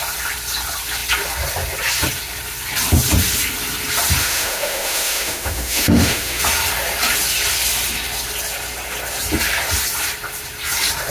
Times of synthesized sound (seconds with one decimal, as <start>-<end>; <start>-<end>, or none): 4.2-6.4